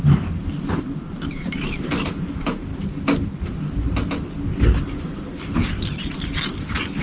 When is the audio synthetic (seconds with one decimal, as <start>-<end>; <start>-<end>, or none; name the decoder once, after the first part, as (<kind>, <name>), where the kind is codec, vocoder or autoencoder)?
0.0-2.7 (vocoder, BigVGAN v2)